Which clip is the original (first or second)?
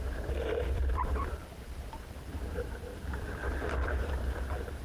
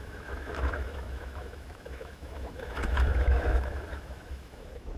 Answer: first